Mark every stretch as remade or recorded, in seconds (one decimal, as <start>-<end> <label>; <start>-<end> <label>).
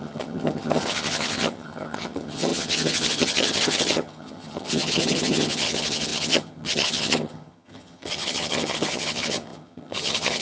0.0-10.4 remade